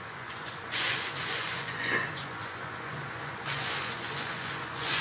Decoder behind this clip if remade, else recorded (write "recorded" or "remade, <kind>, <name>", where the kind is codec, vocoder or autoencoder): remade, vocoder, Vocos